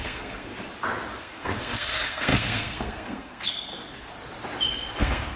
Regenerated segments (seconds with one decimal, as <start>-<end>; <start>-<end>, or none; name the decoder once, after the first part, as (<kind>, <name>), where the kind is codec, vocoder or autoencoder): 0.0-0.5 (codec, SNAC); 1.2-3.7; 5.0-5.4